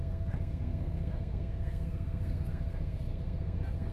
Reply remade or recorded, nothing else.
remade